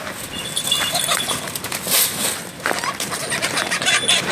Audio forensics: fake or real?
real